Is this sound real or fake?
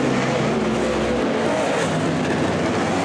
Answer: real